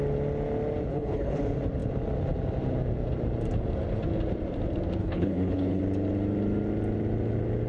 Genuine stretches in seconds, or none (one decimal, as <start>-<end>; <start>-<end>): 0.0-0.9; 1.4-5.0; 5.8-7.7